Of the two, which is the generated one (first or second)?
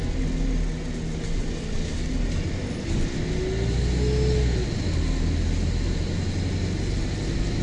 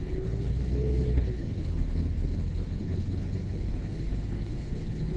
second